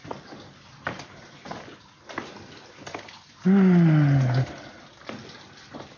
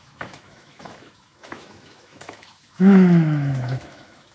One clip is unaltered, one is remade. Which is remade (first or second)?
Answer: second